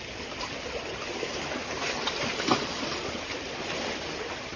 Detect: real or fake real